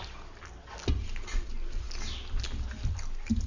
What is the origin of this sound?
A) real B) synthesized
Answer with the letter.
A